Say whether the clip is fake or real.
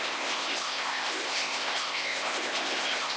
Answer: fake